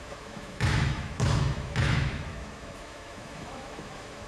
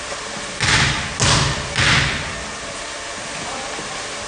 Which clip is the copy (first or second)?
first